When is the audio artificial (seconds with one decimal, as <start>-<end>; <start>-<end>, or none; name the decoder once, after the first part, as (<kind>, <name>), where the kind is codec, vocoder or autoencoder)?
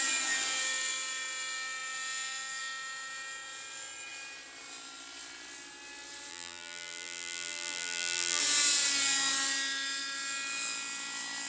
6.3-8.4 (vocoder, BigVGAN v2)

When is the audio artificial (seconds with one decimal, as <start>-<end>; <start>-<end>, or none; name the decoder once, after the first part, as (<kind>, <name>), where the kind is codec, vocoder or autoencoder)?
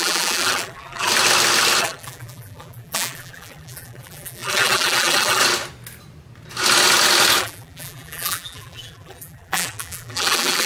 0.0-1.1 (vocoder, BigVGAN v2); 1.8-5.4; 7.4-10.7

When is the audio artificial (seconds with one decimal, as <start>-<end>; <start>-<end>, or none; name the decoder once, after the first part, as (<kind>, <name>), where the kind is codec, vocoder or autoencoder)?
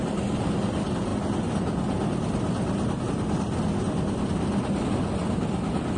none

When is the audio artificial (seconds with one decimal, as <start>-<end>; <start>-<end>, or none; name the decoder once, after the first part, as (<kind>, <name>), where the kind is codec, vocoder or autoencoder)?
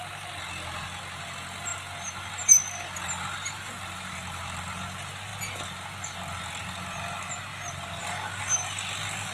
none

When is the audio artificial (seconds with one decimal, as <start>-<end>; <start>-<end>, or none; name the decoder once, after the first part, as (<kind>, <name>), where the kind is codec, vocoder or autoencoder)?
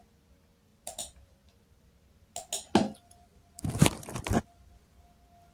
0.7-1.9 (vocoder, BigVGAN v2); 3.3-4.1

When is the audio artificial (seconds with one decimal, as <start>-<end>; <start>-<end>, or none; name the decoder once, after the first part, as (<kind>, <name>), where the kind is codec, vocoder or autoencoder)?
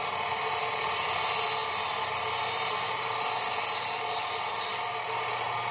1.6-3.5 (vocoder, BigVGAN v2)